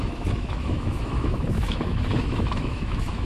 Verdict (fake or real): fake